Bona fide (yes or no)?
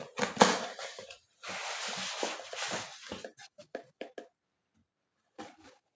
yes